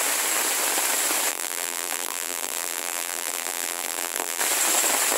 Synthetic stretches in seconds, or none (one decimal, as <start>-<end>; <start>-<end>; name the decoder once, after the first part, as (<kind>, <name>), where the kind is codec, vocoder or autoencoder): 1.3-4.4 (vocoder, BigVGAN v2)

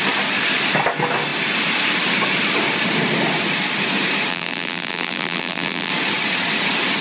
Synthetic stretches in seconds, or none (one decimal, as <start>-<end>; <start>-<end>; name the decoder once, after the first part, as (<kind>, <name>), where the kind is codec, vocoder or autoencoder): 4.3-5.9 (vocoder, BigVGAN v2)